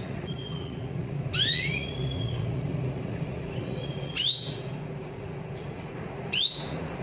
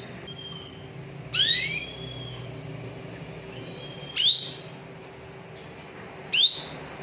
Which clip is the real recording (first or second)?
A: second